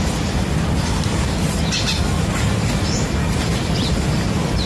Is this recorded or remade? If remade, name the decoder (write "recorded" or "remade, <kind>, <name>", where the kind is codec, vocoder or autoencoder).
recorded